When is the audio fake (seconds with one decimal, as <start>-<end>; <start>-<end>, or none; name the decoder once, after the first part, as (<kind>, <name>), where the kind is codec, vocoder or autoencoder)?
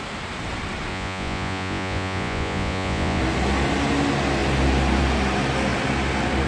0.9-3.2 (vocoder, Vocos)